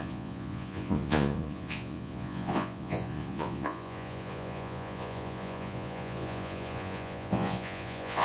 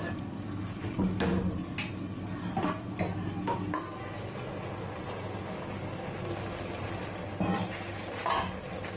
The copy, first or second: first